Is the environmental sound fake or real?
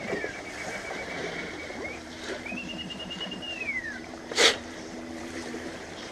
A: fake